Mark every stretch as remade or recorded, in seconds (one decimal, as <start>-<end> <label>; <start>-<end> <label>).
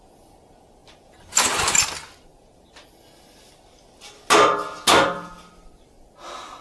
0.0-6.6 recorded